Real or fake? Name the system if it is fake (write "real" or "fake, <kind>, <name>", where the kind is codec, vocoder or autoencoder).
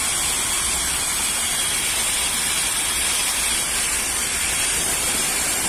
fake, vocoder, BigVGAN v2